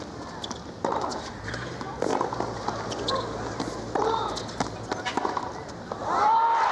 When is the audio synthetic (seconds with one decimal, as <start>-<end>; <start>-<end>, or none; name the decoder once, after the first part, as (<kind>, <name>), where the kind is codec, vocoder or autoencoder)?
none